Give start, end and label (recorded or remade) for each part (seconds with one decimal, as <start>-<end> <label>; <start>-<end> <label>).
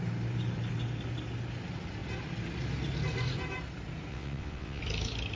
0.0-4.1 recorded; 4.1-4.8 remade; 4.8-5.4 recorded